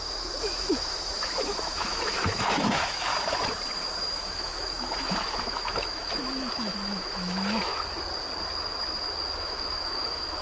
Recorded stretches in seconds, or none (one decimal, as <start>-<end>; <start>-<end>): 3.1-4.0; 7.7-9.4